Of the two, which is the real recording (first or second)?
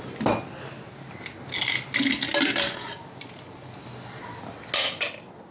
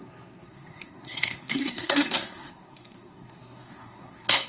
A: first